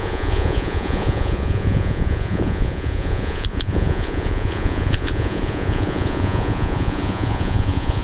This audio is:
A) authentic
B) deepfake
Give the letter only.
B